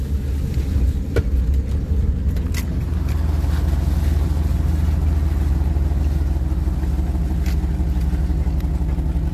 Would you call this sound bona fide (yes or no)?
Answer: yes